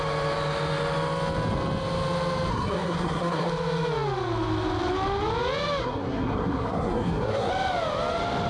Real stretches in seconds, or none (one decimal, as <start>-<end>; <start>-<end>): 0.0-2.5; 3.5-5.8; 7.5-8.5